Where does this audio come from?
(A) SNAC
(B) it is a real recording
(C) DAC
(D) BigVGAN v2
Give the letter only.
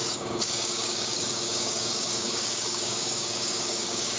C